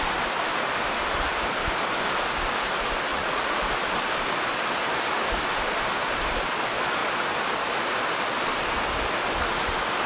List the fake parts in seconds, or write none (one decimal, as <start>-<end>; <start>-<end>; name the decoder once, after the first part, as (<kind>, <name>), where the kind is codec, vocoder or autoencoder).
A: 3.1-3.6 (vocoder, Vocos)